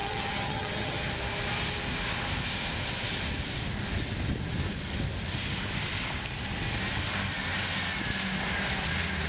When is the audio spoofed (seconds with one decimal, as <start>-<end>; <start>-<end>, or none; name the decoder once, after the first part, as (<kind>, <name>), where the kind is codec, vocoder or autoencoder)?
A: 0.0-1.1 (vocoder, HiFi-GAN)